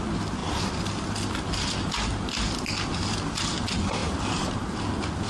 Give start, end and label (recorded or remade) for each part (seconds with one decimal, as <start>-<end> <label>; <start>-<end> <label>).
0.0-5.3 recorded